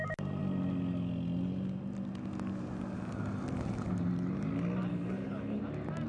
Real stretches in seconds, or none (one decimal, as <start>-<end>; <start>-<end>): 0.0-4.9; 5.6-6.1